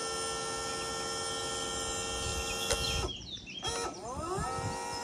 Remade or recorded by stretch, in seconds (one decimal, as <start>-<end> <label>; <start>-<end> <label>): 0.0-5.0 recorded